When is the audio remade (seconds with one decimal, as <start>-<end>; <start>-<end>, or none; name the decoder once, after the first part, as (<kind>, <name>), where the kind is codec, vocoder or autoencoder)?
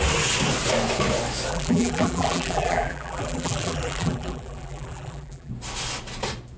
1.5-5.5 (vocoder, BigVGAN v2)